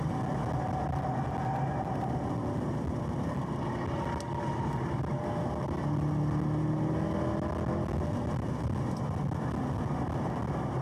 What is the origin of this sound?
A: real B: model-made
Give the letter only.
A